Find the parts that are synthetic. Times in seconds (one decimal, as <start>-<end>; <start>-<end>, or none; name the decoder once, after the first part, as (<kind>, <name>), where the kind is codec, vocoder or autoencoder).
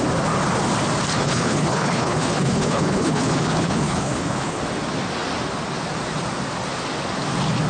1.1-4.6 (codec, HILCodec)